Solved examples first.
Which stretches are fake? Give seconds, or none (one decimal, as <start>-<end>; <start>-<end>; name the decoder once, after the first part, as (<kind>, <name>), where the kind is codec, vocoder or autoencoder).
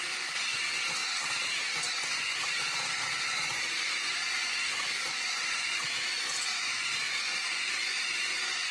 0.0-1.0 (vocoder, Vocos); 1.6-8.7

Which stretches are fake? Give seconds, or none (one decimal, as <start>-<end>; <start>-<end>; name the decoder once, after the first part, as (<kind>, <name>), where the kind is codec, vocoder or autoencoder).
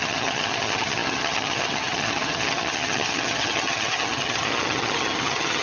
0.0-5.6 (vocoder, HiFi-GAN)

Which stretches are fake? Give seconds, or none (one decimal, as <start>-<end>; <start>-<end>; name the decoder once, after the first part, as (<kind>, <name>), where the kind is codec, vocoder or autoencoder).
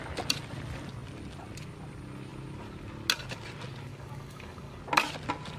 3.9-4.8 (codec, DAC)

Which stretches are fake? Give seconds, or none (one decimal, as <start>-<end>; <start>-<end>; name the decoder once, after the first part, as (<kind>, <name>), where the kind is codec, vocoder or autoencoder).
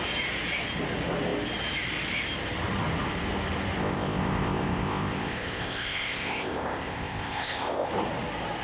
3.8-7.9 (codec, ZipCodec)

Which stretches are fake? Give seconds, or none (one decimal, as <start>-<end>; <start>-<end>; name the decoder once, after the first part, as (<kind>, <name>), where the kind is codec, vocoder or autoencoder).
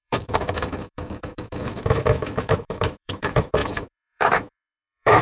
0.0-5.2 (autoencoder, DAC-VAE)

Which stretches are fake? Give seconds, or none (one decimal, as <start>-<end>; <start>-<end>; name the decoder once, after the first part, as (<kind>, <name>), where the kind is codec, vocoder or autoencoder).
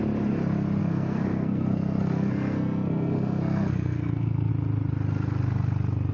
0.8-4.5 (codec, SNAC)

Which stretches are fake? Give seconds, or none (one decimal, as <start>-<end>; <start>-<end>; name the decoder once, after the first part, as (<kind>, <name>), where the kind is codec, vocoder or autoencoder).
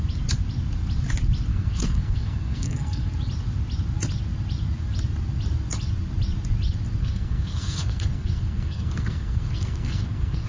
1.5-3.1 (codec, SNAC); 7.0-10.5